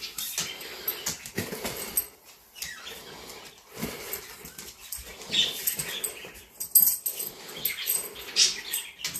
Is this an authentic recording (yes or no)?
yes